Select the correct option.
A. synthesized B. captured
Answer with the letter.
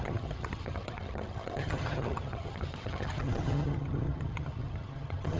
A